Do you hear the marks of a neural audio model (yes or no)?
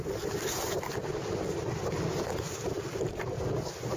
no